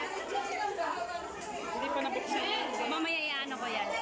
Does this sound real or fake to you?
real